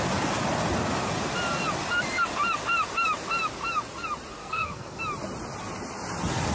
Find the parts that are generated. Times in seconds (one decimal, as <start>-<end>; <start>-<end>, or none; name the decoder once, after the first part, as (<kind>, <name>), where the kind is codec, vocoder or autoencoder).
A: 4.4-5.0 (codec, SNAC)